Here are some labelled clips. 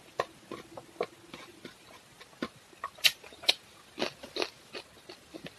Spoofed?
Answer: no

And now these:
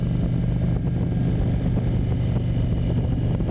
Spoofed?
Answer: no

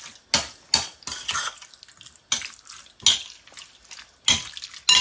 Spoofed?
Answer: no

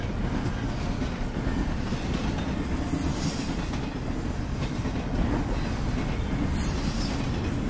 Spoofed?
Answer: no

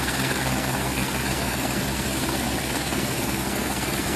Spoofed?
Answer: yes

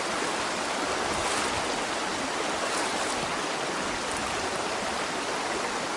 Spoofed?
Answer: no